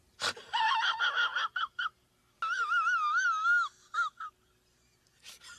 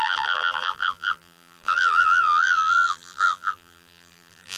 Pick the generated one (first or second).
second